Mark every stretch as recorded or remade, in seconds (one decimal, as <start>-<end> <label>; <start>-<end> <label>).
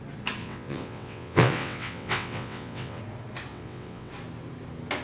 0.0-0.4 recorded; 0.4-3.0 remade; 3.0-3.5 recorded; 3.5-4.1 remade; 4.1-5.0 recorded